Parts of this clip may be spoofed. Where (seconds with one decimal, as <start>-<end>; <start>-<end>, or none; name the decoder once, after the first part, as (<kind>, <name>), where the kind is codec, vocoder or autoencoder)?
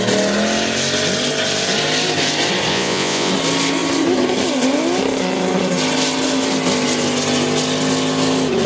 2.7-3.3 (vocoder, Vocos)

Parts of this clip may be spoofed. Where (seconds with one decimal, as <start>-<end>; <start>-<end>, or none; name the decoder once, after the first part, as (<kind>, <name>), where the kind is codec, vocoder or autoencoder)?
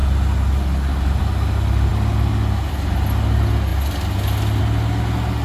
none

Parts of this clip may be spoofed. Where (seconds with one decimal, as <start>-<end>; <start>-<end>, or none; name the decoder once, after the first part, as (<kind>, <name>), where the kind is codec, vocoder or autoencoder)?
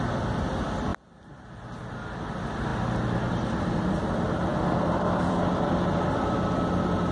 0.0-2.7 (vocoder, BigVGAN v2); 3.3-4.5; 5.0-7.1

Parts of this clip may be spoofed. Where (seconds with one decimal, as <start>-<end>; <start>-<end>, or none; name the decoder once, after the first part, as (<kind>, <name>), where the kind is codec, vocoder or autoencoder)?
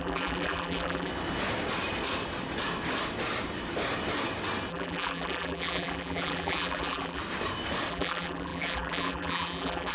0.0-1.1 (vocoder, BigVGAN v2); 4.7-7.2; 7.9-9.9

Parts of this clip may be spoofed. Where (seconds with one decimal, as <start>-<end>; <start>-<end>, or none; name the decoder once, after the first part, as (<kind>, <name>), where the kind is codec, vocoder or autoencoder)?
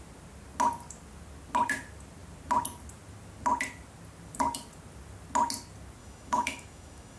6.0-7.2 (autoencoder, DAC-VAE)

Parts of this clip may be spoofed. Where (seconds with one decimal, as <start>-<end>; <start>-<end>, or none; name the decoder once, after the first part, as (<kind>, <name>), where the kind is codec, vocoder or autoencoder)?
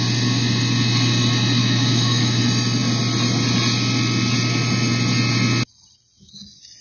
1.6-2.4 (autoencoder, DAC-VAE)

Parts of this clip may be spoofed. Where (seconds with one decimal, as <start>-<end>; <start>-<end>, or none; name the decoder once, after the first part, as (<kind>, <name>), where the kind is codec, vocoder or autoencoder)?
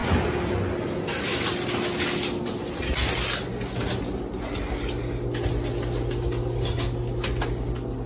none